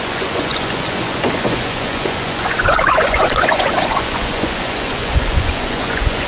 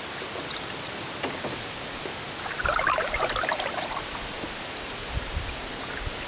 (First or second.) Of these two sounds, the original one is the second